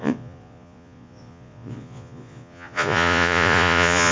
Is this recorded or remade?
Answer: remade